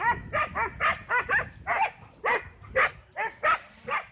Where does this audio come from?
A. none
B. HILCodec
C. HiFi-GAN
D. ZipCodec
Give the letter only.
A